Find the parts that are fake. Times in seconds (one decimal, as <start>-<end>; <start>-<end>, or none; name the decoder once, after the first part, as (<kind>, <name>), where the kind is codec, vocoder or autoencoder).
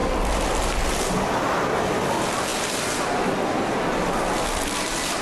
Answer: none